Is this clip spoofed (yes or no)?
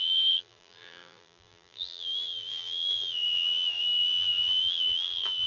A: yes